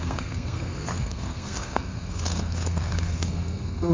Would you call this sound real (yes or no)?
no